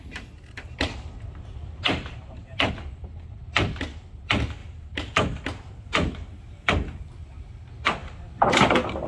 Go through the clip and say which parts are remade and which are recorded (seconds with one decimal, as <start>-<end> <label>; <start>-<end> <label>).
0.0-1.6 recorded; 1.6-2.7 remade; 2.7-4.6 recorded; 4.6-7.0 remade; 7.0-8.0 recorded; 8.0-8.5 remade; 8.5-9.1 recorded